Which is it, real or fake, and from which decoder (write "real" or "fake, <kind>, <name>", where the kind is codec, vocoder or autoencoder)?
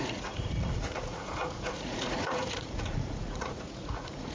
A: fake, vocoder, Vocos